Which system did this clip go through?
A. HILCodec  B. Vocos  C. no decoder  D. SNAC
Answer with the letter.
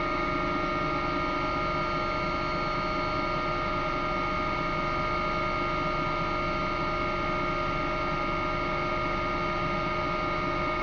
C